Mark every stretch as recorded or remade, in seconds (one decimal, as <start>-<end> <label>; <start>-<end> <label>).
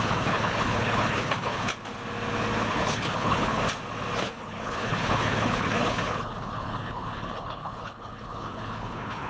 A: 0.0-1.7 remade; 1.7-2.7 recorded; 2.7-3.6 remade; 3.6-4.2 recorded; 4.2-9.3 remade